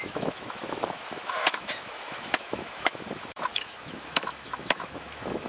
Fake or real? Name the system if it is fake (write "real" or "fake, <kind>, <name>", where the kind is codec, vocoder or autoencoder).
fake, autoencoder, DAC-VAE